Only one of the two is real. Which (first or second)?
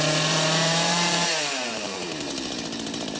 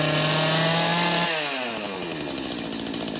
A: second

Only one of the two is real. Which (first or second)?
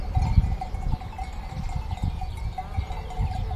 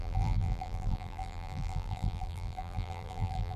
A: first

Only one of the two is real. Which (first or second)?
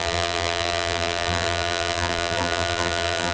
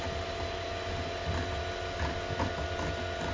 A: second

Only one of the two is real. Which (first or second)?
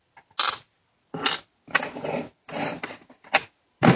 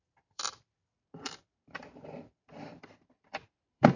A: first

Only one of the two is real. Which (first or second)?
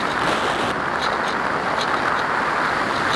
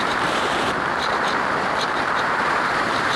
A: first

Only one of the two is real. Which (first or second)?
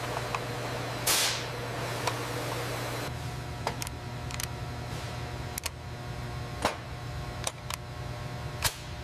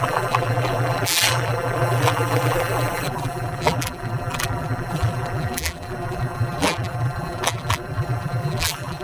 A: first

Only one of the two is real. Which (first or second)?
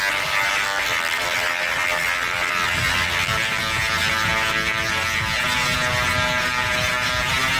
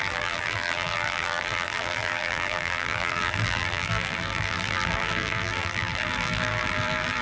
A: first